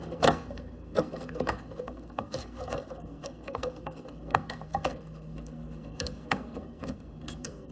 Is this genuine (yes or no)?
no